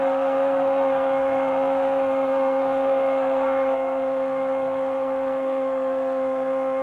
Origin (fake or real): fake